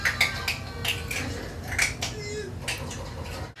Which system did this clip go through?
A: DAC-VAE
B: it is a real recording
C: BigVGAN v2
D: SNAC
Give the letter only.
B